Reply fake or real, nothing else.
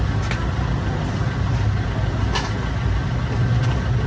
real